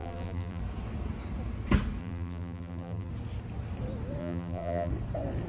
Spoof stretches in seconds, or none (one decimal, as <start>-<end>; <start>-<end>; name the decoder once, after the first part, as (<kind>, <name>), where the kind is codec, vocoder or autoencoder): 0.0-0.6 (vocoder, BigVGAN v2); 2.0-3.1; 4.2-4.9